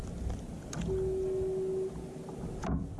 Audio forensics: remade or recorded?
recorded